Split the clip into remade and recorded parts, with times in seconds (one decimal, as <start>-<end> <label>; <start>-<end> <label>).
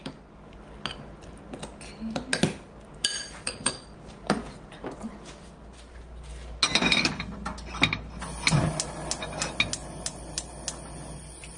0.0-3.0 recorded; 3.0-5.1 remade; 5.1-9.8 recorded; 9.8-10.6 remade; 10.6-11.6 recorded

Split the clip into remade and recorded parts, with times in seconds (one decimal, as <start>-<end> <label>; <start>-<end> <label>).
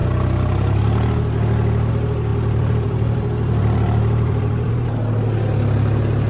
0.0-2.3 recorded; 2.3-4.7 remade; 4.7-6.3 recorded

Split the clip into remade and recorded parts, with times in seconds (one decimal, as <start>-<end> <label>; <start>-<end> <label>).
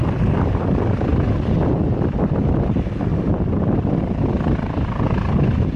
0.0-1.1 recorded; 1.1-2.5 remade; 2.5-3.1 recorded; 3.1-4.0 remade; 4.0-5.8 recorded